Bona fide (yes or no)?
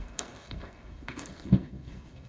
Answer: no